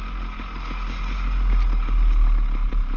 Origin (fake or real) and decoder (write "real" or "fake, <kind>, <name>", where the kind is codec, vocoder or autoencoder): real